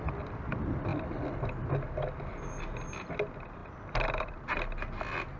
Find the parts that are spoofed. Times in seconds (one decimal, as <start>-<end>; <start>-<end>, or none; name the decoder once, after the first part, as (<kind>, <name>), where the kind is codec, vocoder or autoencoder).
3.6-4.4 (vocoder, BigVGAN v2)

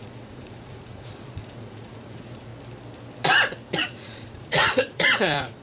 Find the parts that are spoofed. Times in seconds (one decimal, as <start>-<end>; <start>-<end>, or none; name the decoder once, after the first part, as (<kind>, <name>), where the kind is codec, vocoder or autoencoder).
0.0-2.5 (vocoder, Vocos); 3.8-5.6

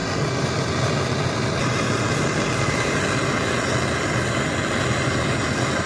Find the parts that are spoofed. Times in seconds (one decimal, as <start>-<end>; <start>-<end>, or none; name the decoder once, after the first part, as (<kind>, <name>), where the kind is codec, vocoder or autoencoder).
none

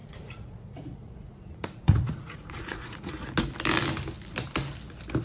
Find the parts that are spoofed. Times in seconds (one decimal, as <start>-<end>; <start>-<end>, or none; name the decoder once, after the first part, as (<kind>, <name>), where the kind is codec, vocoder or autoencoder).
0.0-3.1 (vocoder, Vocos)